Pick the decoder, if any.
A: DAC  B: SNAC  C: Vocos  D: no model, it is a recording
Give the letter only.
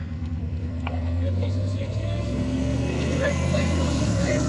B